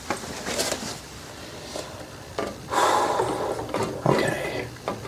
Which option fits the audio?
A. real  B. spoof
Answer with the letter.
A